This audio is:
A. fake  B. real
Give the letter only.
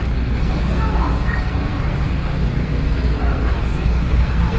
A